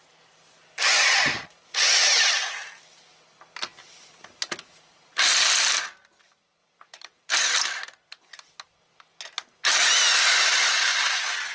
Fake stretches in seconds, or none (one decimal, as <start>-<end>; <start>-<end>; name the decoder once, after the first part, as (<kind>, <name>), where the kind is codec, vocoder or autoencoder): 3.8-5.3 (vocoder, BigVGAN v2); 6.6-7.4; 10.9-11.5